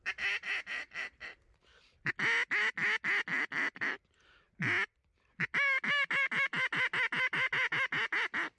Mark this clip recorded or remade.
recorded